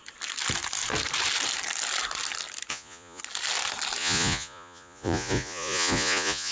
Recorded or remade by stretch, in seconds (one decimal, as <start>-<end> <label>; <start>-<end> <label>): 0.0-2.7 recorded; 2.7-3.2 remade; 3.2-4.0 recorded; 4.0-6.5 remade